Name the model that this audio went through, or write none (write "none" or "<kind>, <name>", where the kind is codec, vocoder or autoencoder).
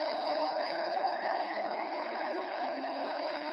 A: codec, HILCodec